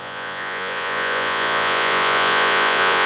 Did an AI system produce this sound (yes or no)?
yes